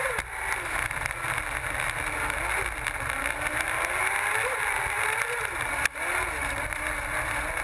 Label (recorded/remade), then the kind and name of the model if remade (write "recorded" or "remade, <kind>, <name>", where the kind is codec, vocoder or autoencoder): recorded